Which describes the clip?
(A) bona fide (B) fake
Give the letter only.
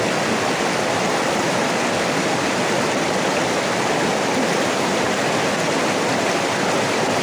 A